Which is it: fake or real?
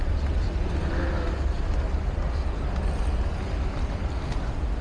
real